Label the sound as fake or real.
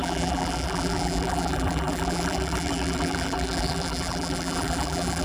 fake